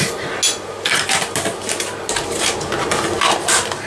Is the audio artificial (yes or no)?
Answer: no